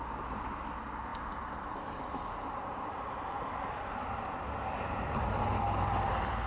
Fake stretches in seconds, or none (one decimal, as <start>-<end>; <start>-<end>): none